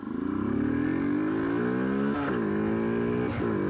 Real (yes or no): yes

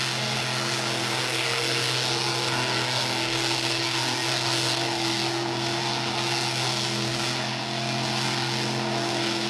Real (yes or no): no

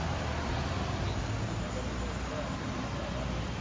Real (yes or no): yes